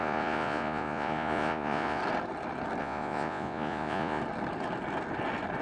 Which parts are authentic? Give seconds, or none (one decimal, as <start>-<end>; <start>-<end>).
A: 2.0-2.8; 4.2-5.6